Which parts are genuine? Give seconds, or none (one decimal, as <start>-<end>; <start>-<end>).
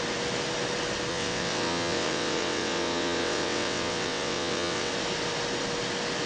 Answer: 0.0-1.1; 4.9-6.3